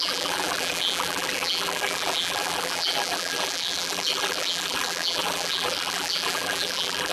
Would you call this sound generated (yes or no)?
yes